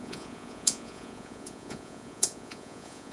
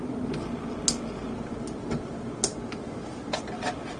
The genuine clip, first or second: second